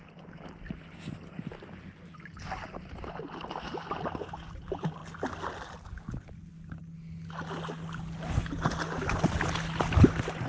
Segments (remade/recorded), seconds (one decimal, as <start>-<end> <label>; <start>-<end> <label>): 0.0-10.5 recorded